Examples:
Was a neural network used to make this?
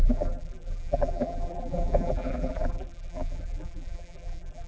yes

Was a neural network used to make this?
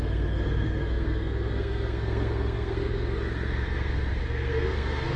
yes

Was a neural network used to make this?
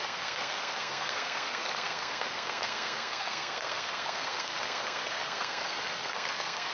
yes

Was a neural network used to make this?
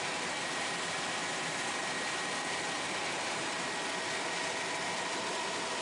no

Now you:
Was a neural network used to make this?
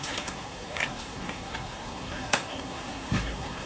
yes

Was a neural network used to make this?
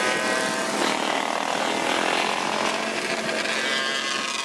no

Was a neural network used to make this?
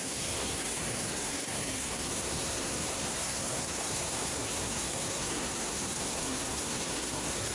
yes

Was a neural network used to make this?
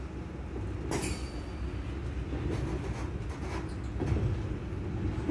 no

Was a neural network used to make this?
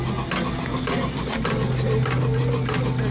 no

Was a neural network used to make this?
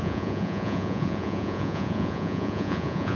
yes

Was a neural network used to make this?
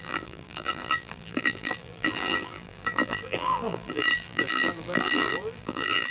yes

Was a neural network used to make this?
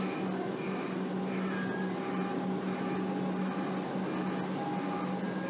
no